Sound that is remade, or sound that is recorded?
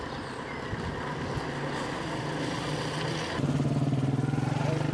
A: recorded